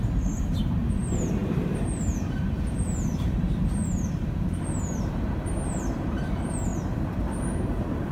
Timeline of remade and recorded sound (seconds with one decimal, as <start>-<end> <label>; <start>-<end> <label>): 0.0-6.7 remade; 6.7-7.4 recorded; 7.4-8.1 remade